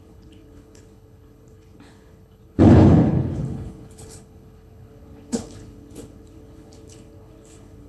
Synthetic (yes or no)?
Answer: yes